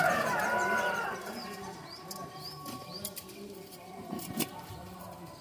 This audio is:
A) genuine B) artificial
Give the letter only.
B